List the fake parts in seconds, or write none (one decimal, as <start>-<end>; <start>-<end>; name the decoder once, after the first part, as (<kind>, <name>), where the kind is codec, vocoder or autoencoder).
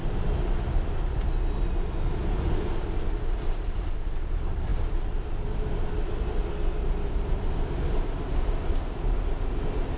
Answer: 0.0-1.3 (vocoder, BigVGAN v2); 4.7-8.6